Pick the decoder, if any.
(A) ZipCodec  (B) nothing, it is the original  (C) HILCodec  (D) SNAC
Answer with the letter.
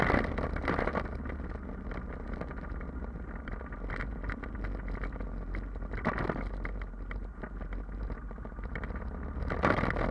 B